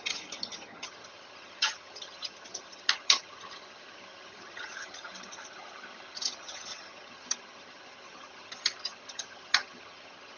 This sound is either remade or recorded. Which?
remade